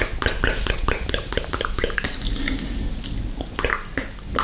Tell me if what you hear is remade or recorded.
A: recorded